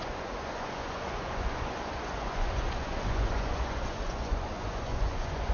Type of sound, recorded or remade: remade